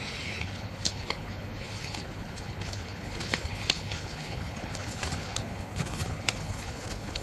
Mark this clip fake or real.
fake